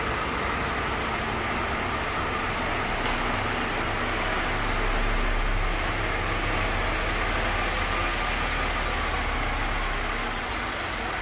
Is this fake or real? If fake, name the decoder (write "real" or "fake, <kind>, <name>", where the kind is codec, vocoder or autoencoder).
real